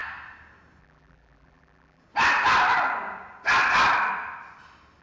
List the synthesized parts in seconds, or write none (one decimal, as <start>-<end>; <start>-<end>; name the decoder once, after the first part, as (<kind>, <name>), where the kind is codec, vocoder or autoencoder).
0.8-2.0 (vocoder, BigVGAN v2)